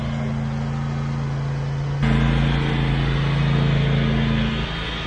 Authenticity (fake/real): real